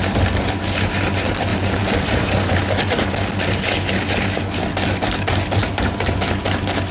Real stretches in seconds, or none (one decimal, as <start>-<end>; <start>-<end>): 0.0-1.5; 2.5-5.6; 6.2-6.9